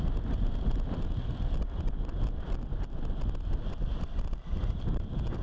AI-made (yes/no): no